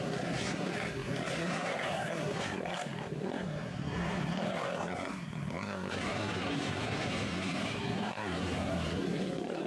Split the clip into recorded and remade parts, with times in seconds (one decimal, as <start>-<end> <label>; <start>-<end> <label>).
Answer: 0.0-9.7 remade